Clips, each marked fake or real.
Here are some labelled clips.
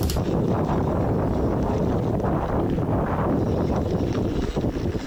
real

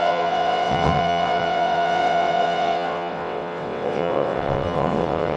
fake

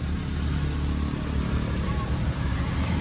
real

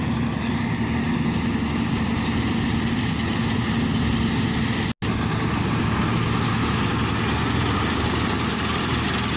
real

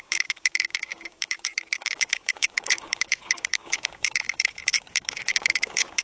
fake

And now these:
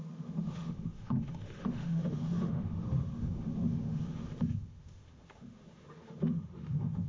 fake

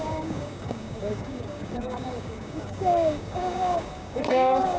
fake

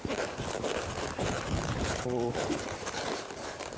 fake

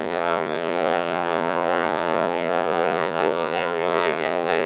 fake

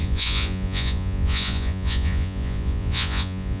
fake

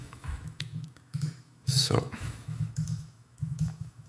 fake